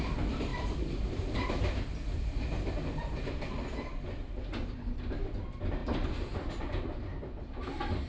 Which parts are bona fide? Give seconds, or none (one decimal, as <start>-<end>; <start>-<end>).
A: 0.0-0.5; 3.5-8.1